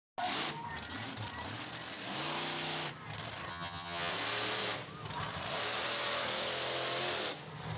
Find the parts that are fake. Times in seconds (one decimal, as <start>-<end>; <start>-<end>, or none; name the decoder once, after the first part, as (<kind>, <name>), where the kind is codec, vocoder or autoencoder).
3.5-4.1 (vocoder, HiFi-GAN)